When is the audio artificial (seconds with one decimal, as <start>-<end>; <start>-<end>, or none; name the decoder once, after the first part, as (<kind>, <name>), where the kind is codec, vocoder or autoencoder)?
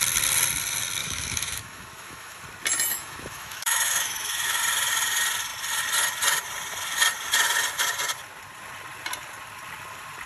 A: 1.0-2.4 (autoencoder, DAC-VAE); 2.9-4.6